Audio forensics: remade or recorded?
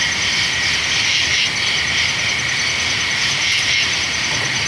recorded